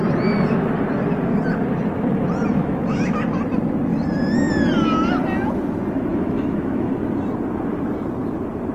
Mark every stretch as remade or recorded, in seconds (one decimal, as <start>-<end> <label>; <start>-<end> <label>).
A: 0.0-2.6 recorded; 2.6-3.1 remade; 3.1-6.1 recorded; 6.1-6.9 remade; 6.9-8.7 recorded